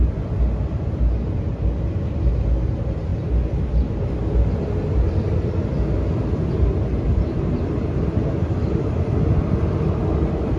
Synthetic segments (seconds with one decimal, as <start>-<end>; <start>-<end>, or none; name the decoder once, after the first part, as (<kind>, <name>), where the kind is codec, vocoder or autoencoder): none